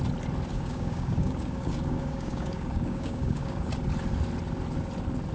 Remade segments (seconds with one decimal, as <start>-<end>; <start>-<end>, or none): 0.5-3.7